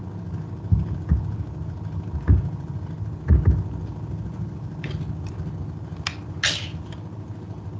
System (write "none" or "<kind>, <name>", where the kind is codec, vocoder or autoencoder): none